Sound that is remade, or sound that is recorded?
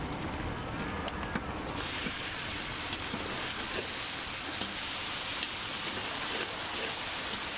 recorded